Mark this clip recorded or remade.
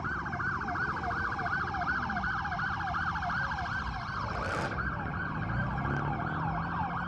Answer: recorded